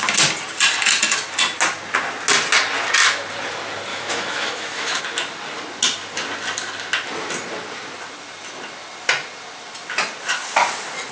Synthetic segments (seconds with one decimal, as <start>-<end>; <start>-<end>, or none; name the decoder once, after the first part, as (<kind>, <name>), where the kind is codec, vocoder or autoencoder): 3.9-5.0 (autoencoder, DAC-VAE)